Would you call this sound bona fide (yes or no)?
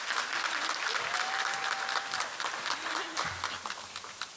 yes